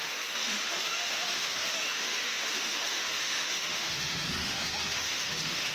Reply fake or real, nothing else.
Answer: fake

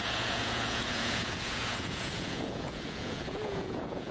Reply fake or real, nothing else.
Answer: fake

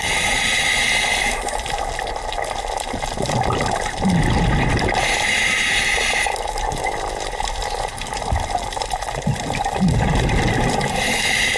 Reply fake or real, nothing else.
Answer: real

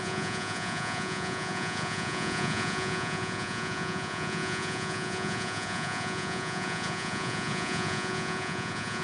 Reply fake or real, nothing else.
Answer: fake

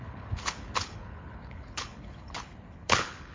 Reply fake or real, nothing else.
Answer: fake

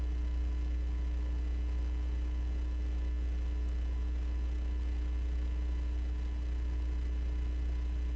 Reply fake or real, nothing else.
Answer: real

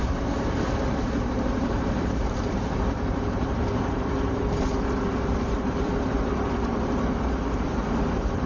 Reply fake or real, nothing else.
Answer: fake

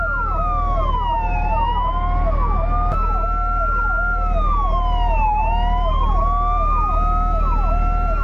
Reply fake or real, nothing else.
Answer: real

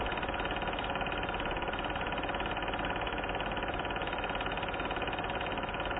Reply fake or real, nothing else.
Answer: real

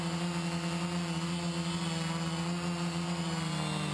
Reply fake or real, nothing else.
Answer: real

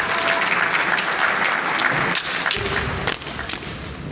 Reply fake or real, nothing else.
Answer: real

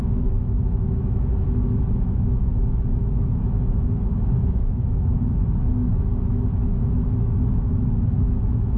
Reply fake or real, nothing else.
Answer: fake